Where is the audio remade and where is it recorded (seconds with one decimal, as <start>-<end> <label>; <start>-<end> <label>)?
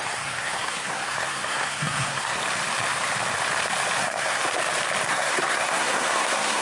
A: 0.0-2.4 remade; 2.4-4.0 recorded; 4.0-4.4 remade; 4.4-5.1 recorded; 5.1-6.6 remade